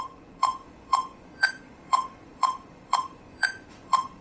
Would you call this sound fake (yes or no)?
yes